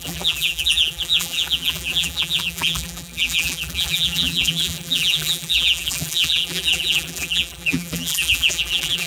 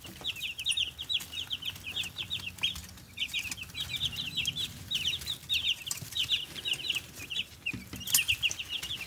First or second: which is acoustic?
second